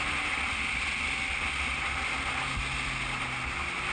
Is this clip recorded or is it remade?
recorded